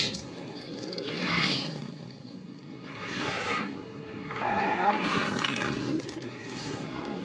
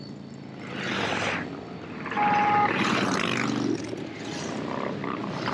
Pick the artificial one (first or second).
first